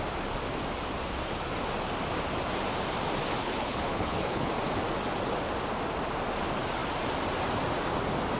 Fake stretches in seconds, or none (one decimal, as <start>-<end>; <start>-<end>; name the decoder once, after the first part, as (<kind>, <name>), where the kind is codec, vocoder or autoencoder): 3.4-4.5 (codec, HILCodec)